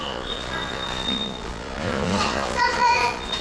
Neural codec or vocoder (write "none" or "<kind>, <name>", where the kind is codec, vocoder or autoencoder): vocoder, Vocos